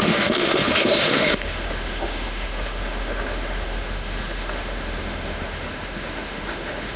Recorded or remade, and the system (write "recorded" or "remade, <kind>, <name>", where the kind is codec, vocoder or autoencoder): remade, autoencoder, DAC-VAE